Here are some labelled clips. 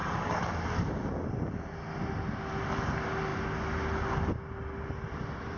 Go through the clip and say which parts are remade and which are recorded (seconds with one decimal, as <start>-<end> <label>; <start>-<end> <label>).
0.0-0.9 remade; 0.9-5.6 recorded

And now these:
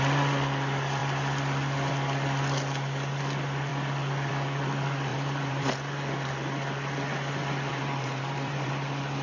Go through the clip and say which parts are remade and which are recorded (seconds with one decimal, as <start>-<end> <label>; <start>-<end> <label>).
0.0-5.1 recorded; 5.1-5.7 remade; 5.7-7.7 recorded; 7.7-8.7 remade; 8.7-9.2 recorded

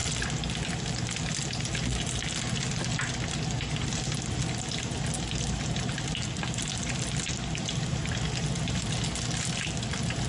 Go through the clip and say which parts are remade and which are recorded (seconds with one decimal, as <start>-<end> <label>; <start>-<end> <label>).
0.0-10.3 recorded

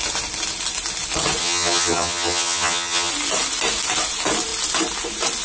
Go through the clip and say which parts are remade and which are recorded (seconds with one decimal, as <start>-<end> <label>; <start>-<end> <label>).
0.0-1.4 recorded; 1.4-3.1 remade; 3.1-5.4 recorded